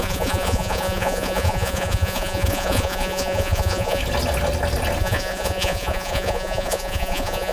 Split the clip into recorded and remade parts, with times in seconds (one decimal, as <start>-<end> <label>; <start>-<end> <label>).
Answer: 0.0-4.0 remade; 4.0-5.0 recorded; 5.0-7.5 remade